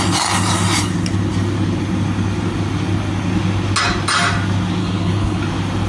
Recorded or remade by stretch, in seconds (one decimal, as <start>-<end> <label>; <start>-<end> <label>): 0.0-4.8 recorded; 4.8-5.4 remade; 5.4-5.9 recorded